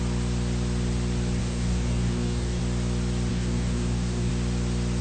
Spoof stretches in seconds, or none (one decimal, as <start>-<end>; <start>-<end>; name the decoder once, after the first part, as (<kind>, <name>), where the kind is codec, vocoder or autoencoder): 1.4-2.6 (codec, DAC); 3.3-4.3